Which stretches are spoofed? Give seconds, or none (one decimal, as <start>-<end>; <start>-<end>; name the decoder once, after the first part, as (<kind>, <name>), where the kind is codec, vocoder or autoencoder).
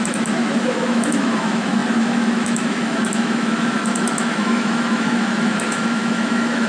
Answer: 0.0-6.7 (autoencoder, DAC-VAE)